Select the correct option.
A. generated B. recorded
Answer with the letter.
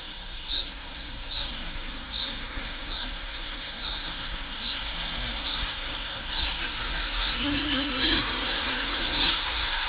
A